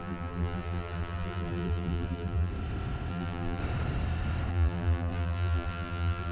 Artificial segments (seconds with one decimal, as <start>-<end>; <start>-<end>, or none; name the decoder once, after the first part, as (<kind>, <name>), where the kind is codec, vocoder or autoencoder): 0.0-2.5 (vocoder, BigVGAN v2); 3.1-3.6; 4.5-6.3